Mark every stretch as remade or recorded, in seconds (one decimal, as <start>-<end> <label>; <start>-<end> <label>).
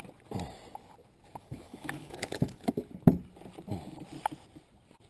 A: 0.0-1.4 recorded; 1.4-2.8 remade; 2.8-5.1 recorded